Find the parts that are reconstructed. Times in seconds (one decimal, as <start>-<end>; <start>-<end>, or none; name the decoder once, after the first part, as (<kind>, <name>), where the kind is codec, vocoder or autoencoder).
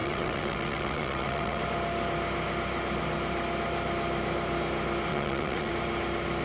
0.0-1.6 (vocoder, WaveNeXt); 5.1-5.7